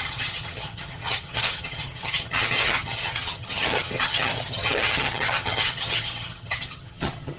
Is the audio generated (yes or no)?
yes